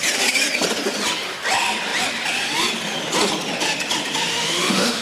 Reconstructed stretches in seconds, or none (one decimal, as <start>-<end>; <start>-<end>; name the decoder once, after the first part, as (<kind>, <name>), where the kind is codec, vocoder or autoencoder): 4.3-5.0 (autoencoder, DAC-VAE)